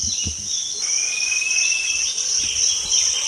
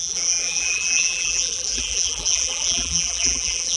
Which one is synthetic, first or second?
second